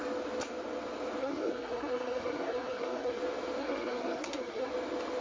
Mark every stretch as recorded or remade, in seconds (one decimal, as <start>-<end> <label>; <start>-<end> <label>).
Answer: 0.0-1.2 recorded; 1.2-3.2 remade; 3.2-3.6 recorded; 3.6-4.7 remade; 4.7-5.2 recorded